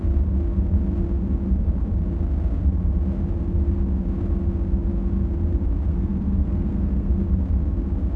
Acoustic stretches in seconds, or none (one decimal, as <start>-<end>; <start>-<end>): 0.0-5.9; 7.1-8.2